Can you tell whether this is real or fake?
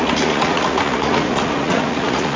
fake